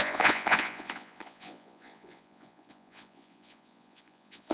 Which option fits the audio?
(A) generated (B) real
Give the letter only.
A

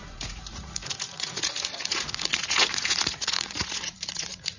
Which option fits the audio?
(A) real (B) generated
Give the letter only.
B